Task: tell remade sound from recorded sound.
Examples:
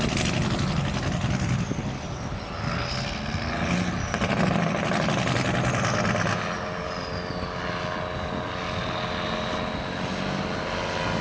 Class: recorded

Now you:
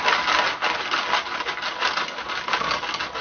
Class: recorded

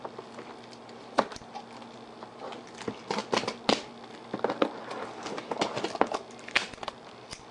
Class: recorded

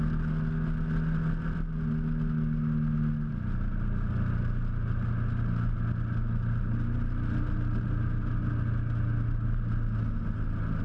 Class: recorded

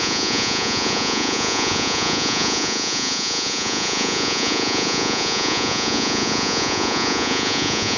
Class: remade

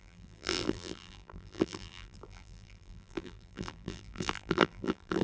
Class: remade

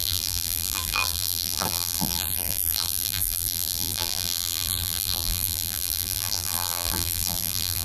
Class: remade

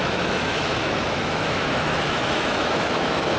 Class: remade